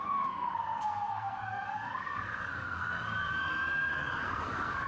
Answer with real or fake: fake